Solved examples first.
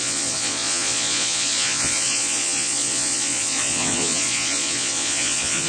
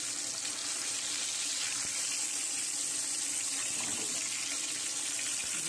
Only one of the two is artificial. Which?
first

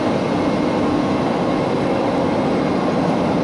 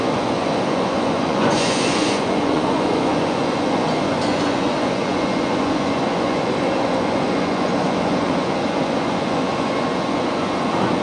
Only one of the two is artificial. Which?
second